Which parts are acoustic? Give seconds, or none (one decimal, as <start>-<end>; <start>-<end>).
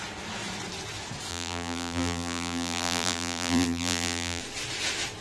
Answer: 0.0-1.3; 4.4-5.2